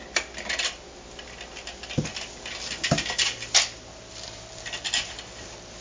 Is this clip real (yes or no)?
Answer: yes